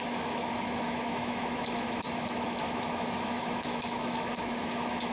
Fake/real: fake